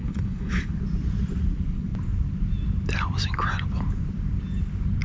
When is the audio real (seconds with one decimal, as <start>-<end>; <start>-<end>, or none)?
0.7-5.0